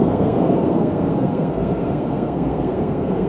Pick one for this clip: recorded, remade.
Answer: remade